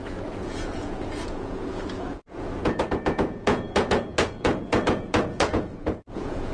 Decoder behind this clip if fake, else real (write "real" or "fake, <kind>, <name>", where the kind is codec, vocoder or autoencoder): fake, vocoder, Vocos